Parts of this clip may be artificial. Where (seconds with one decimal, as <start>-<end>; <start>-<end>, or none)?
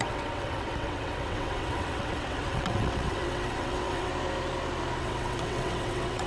0.0-4.1; 5.0-6.3